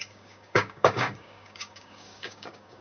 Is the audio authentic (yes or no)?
no